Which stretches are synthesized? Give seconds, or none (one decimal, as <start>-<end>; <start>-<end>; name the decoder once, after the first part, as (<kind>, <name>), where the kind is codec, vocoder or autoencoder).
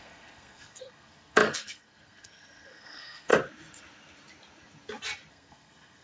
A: 0.0-3.3 (codec, SNAC); 5.3-6.0